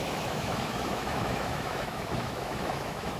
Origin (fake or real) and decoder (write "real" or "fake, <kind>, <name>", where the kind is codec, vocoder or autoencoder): fake, autoencoder, DAC-VAE